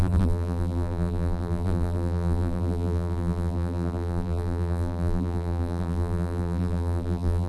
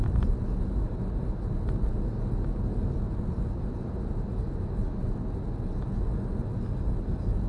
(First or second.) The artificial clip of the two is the first